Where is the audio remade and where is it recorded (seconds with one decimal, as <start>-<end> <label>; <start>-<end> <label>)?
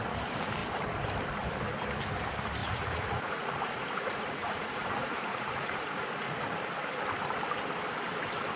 0.0-2.6 recorded; 2.6-6.7 remade; 6.7-8.6 recorded